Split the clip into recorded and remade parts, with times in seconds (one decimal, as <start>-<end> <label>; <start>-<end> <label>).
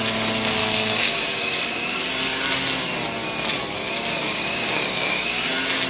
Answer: 0.0-0.6 recorded; 0.6-2.0 remade; 2.0-4.2 recorded; 4.2-5.5 remade; 5.5-5.9 recorded